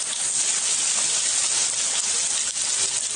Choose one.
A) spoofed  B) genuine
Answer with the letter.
B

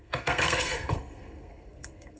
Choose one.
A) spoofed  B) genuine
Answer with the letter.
A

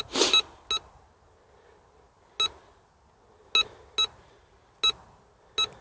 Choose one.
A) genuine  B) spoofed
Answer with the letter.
A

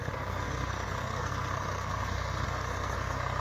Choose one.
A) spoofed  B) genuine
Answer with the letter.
A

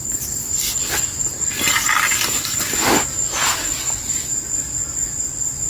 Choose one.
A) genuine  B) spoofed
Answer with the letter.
A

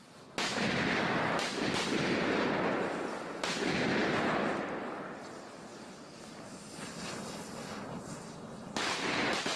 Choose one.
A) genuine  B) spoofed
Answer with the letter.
A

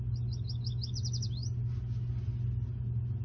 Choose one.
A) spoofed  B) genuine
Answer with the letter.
B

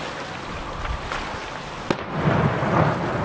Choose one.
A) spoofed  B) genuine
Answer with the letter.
B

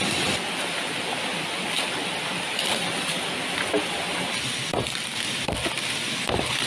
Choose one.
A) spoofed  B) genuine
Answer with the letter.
B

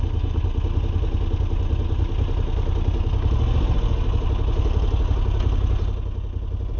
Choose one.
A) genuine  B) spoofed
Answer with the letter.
A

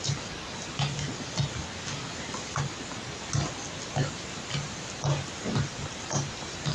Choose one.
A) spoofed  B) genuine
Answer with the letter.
B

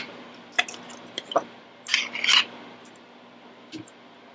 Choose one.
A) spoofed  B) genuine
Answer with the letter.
B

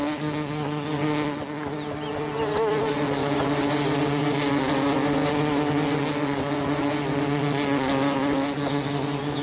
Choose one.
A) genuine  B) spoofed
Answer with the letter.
A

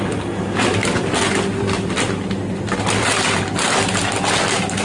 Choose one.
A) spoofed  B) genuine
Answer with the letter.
B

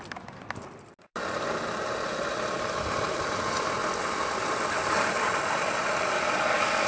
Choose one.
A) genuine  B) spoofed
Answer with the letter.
A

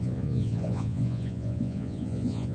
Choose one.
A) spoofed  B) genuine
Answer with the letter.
A